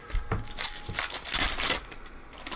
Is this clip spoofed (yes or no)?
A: no